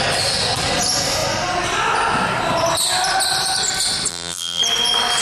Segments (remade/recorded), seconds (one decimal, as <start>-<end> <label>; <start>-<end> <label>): 0.0-4.1 recorded; 4.1-4.6 remade; 4.6-5.2 recorded